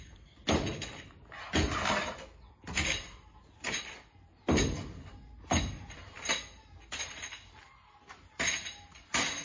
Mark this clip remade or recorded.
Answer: recorded